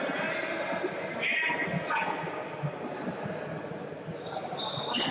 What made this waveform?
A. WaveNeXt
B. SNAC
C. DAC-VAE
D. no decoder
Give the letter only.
D